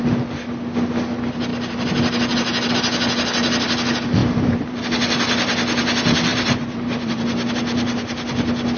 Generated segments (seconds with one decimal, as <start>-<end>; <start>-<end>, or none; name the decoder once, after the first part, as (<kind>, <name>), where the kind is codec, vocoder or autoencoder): 4.2-4.8 (vocoder, BigVGAN v2); 6.3-7.5